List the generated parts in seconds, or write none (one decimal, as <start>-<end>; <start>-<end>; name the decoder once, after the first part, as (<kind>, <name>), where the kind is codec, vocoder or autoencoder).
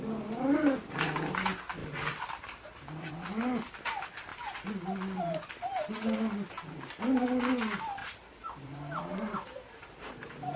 1.8-3.1 (vocoder, BigVGAN v2); 8.0-10.6